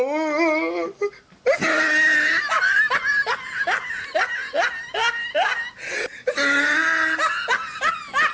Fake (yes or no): no